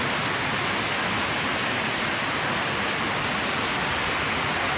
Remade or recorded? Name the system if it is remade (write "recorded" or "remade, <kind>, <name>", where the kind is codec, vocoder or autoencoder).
recorded